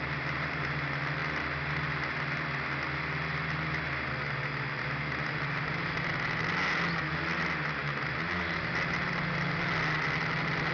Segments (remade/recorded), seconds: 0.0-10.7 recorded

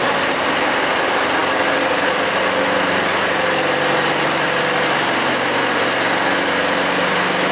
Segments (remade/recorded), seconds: 0.0-7.5 recorded